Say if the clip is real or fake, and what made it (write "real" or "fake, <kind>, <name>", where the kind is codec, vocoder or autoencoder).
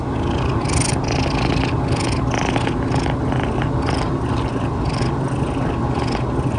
real